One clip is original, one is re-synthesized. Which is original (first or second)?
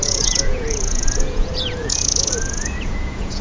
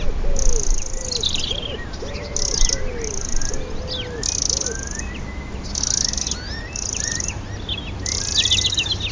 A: second